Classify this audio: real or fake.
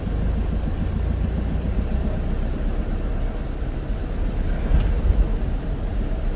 real